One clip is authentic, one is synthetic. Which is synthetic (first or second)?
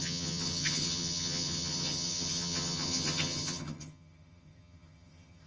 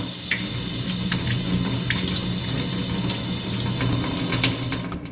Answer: first